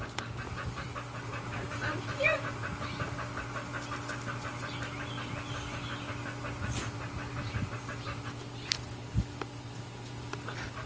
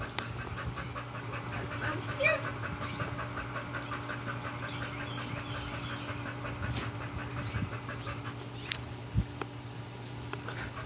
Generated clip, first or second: second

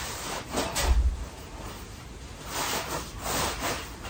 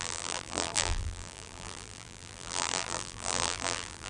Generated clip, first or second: second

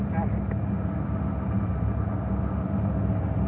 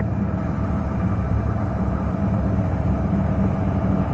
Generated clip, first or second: second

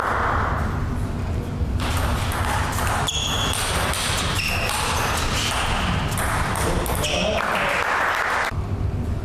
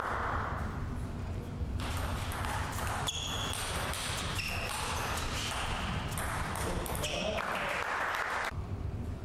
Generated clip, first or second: second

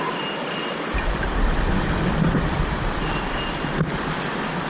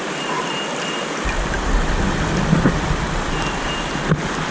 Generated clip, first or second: first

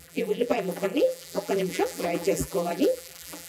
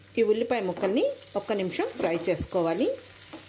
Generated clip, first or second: first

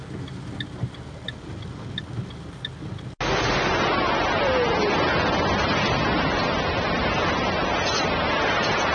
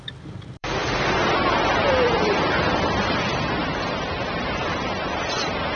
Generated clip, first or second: second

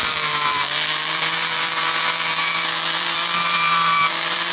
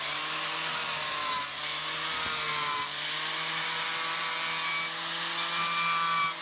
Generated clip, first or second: first